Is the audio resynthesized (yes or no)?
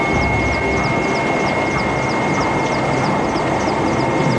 no